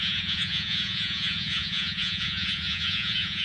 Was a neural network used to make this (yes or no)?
yes